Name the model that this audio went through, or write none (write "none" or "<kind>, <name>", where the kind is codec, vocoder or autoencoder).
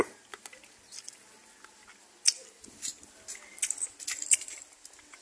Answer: none